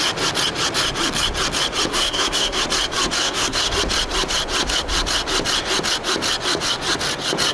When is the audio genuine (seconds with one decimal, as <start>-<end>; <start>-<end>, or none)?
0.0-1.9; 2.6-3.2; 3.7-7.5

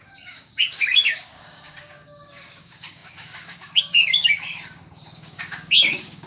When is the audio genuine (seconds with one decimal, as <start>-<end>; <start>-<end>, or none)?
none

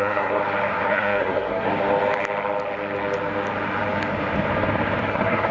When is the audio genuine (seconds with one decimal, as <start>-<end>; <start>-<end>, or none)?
0.4-0.9; 1.7-5.0

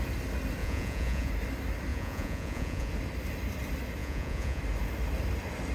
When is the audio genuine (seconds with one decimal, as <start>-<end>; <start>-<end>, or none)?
0.0-0.6; 1.3-1.9; 2.9-4.0; 4.6-5.7

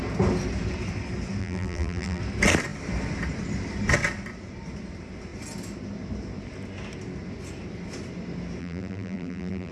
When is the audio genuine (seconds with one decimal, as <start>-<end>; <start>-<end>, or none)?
0.0-1.4; 2.2-8.6

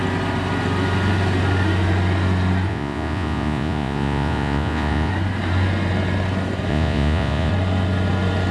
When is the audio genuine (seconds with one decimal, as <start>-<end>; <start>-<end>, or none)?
0.0-2.7; 5.1-6.7; 7.5-8.5